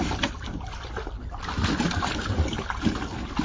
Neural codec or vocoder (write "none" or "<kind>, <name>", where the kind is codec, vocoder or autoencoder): none